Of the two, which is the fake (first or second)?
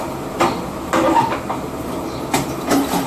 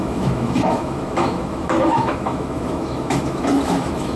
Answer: second